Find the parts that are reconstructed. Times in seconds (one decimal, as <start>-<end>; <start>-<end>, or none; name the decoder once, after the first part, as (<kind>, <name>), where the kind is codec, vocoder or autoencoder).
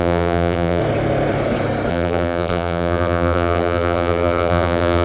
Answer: 0.0-0.8 (vocoder, BigVGAN v2); 1.9-5.0